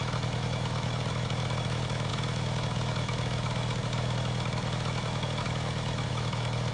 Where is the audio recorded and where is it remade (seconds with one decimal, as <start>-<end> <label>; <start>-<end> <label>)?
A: 0.0-6.7 remade